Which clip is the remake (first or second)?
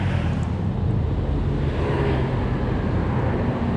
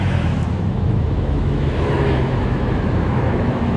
second